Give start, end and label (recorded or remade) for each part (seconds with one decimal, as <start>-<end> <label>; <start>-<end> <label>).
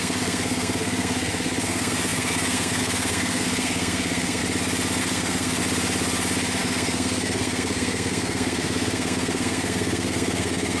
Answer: 0.0-4.4 remade; 4.4-5.0 recorded; 5.0-5.6 remade; 5.6-6.6 recorded; 6.6-10.8 remade